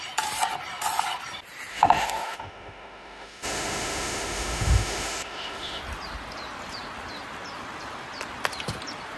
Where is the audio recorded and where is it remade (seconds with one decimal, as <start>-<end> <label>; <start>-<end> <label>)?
0.0-1.7 recorded; 1.7-5.8 remade; 5.8-9.2 recorded